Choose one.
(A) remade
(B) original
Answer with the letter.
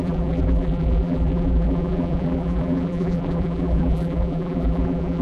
A